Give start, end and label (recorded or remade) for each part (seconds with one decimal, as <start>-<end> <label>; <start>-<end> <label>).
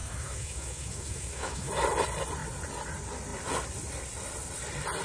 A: 0.0-1.7 remade; 1.7-5.0 recorded